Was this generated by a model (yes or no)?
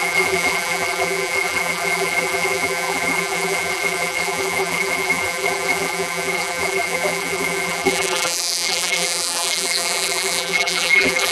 yes